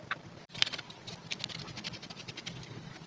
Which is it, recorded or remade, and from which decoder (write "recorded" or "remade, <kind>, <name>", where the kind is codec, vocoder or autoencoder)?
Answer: recorded